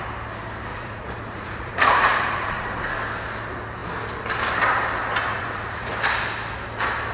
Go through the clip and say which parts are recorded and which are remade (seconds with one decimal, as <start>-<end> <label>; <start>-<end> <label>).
0.0-0.7 recorded; 0.7-2.8 remade; 2.8-5.3 recorded; 5.3-5.9 remade; 5.9-7.1 recorded